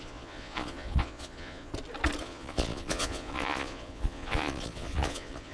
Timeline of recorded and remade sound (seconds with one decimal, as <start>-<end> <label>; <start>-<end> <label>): 0.0-1.7 remade; 1.7-2.2 recorded; 2.2-5.5 remade